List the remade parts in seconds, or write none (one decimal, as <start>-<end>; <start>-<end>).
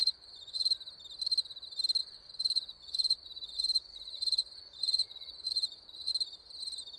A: 0.0-0.7; 2.0-6.1